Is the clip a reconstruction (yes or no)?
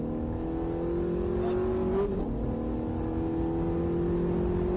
no